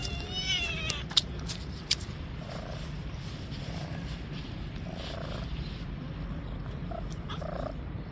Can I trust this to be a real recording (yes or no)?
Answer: no